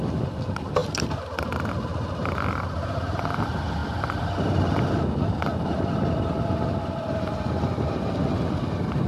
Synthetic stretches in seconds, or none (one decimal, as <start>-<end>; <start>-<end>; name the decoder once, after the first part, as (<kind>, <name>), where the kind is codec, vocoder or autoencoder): none